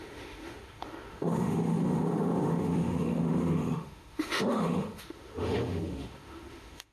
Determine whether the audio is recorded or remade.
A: remade